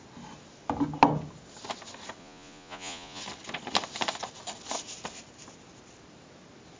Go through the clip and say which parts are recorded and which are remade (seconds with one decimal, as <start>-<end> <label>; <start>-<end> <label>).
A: 0.0-2.2 recorded; 2.2-3.2 remade; 3.2-6.8 recorded